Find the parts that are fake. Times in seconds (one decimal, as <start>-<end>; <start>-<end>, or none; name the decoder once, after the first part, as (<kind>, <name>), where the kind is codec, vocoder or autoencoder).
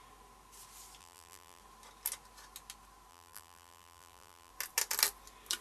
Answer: 1.0-1.6 (vocoder, BigVGAN v2); 3.1-4.5